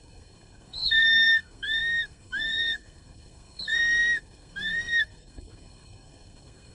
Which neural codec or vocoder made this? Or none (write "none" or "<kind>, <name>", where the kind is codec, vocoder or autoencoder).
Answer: codec, SNAC